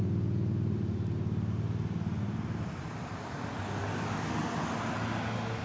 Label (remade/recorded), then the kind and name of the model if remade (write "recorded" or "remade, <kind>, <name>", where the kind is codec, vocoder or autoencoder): recorded